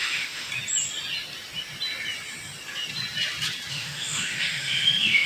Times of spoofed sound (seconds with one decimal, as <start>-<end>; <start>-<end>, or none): 0.0-0.5; 3.7-5.3